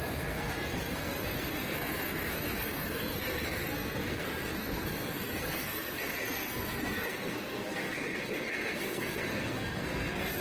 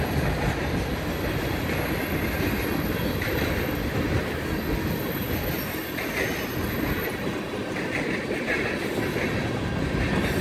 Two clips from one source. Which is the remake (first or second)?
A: first